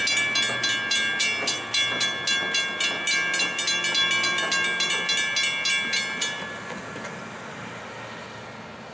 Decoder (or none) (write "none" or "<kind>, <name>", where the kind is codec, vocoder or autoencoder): none